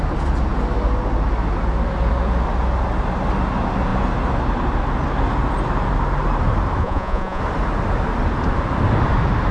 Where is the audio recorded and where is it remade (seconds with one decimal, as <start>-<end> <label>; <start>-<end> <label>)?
0.0-6.8 recorded; 6.8-7.4 remade; 7.4-9.5 recorded